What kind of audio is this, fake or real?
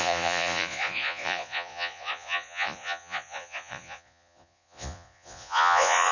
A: fake